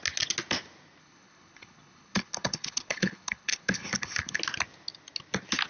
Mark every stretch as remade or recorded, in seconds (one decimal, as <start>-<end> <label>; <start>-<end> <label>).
0.0-1.0 recorded; 1.0-4.4 remade; 4.4-5.7 recorded